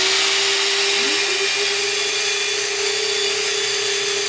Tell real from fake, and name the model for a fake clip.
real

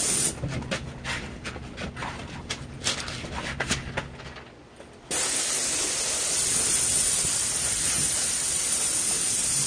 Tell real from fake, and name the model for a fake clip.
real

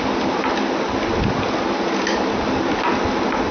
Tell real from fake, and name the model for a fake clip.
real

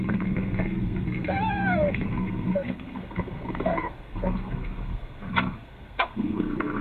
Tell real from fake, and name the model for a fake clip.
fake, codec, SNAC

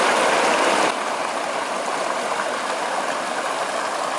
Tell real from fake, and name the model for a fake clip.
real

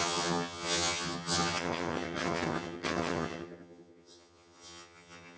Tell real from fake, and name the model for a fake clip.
fake, vocoder, HiFi-GAN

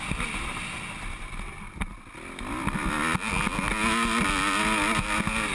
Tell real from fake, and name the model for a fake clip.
real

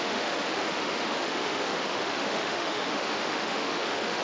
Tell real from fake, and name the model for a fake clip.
fake, autoencoder, DAC-VAE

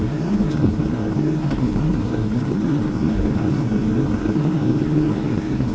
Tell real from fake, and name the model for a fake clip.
fake, codec, SNAC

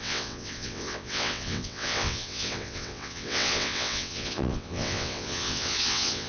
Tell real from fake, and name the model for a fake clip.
fake, vocoder, WaveNeXt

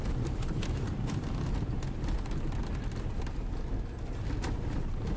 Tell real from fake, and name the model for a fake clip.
real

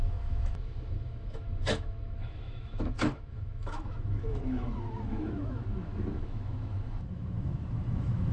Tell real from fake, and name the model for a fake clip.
fake, autoencoder, DAC-VAE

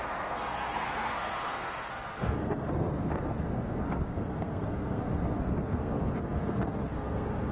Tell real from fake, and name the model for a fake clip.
fake, codec, SNAC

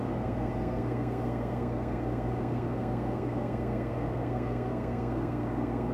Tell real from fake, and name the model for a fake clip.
fake, codec, SNAC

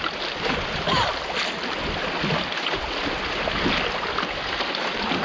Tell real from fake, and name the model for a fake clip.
real